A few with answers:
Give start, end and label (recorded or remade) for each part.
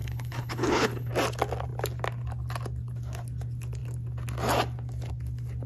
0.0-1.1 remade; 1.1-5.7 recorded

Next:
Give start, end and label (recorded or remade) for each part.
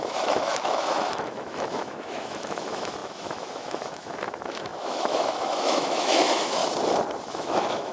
0.0-6.6 remade; 6.6-7.2 recorded; 7.2-7.9 remade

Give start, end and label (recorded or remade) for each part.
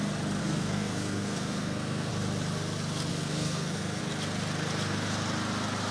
0.0-0.4 recorded; 0.4-2.1 remade; 2.1-3.1 recorded; 3.1-4.0 remade; 4.0-5.9 recorded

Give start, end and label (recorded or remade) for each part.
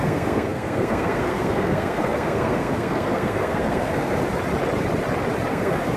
0.0-4.2 remade; 4.2-5.5 recorded; 5.5-6.0 remade